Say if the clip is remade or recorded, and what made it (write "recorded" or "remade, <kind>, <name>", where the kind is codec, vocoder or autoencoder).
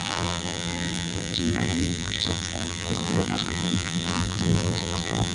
remade, vocoder, BigVGAN v2